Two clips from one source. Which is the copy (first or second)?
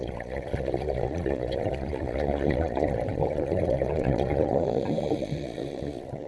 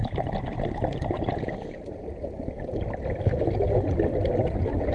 first